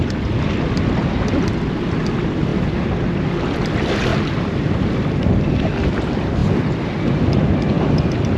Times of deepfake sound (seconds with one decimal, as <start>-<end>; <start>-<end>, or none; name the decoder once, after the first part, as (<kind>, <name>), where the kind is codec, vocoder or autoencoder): none